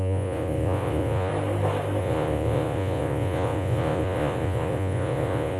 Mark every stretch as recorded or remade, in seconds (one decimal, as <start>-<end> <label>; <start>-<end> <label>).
0.0-1.3 remade; 1.3-2.0 recorded; 2.0-5.6 remade